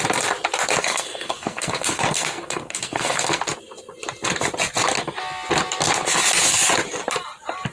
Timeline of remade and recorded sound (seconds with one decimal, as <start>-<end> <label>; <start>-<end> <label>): 0.0-0.8 recorded; 0.8-3.4 remade; 3.4-7.7 recorded